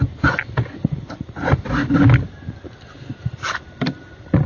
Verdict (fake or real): real